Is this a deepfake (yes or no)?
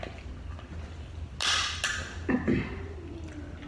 no